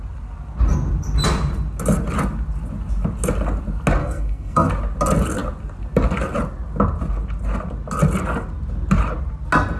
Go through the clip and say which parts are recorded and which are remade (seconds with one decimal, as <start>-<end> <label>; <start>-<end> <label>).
0.0-4.0 recorded; 4.0-4.7 remade; 4.7-9.8 recorded